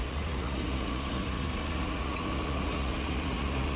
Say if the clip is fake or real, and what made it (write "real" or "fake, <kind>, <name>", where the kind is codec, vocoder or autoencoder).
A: fake, vocoder, Vocos